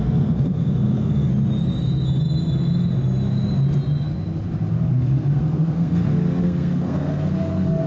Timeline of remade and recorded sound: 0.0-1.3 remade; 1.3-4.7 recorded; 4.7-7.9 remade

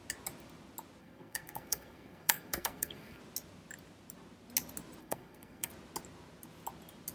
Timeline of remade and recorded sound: 0.0-1.0 recorded; 1.0-3.2 remade; 3.2-5.0 recorded; 5.0-5.7 remade; 5.7-7.1 recorded

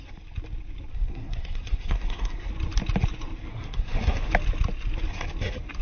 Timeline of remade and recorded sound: 0.0-0.9 recorded; 0.9-2.5 remade; 2.5-3.5 recorded; 3.5-4.3 remade; 4.3-5.8 recorded

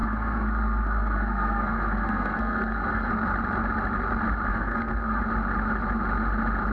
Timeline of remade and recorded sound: 0.0-3.1 remade; 3.1-4.5 recorded; 4.5-5.2 remade; 5.2-6.7 recorded

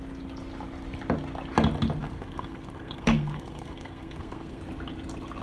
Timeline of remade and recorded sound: 0.0-2.0 recorded; 2.0-4.6 remade; 4.6-5.4 recorded